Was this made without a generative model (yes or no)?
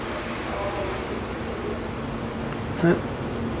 yes